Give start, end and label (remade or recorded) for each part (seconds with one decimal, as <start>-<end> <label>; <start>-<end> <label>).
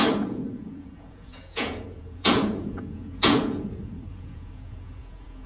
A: 0.0-5.5 remade